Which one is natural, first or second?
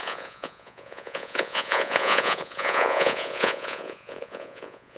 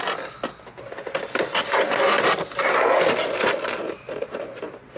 second